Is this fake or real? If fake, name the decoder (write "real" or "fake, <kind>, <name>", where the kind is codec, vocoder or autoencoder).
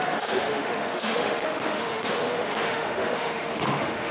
fake, autoencoder, DAC-VAE